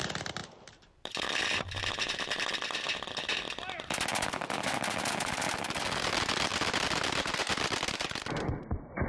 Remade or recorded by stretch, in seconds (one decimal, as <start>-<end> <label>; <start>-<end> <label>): 0.0-0.4 recorded; 0.4-3.3 remade; 3.3-6.5 recorded; 6.5-8.6 remade; 8.6-9.1 recorded